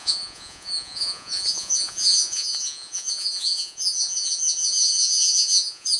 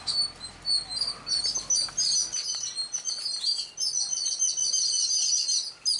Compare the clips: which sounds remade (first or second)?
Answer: first